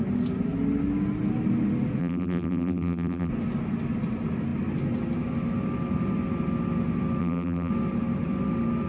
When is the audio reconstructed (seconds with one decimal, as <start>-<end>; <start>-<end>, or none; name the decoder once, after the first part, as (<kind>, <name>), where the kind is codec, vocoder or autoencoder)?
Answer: 2.0-3.3 (vocoder, BigVGAN v2); 7.2-7.7